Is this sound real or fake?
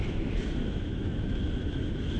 fake